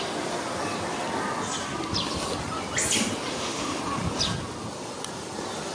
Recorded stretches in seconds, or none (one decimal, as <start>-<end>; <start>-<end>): 0.0-3.3; 3.8-5.7